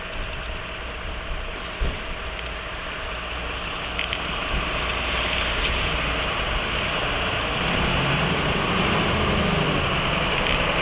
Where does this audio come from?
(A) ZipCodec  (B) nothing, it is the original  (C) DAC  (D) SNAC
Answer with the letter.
B